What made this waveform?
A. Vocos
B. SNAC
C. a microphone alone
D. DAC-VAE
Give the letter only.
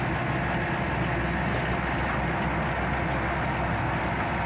C